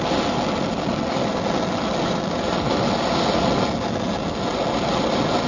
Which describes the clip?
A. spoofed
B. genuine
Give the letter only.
B